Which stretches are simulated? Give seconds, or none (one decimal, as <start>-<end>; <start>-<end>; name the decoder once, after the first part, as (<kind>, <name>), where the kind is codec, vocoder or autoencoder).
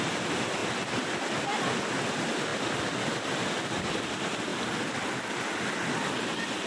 none